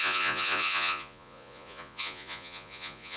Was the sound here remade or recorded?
remade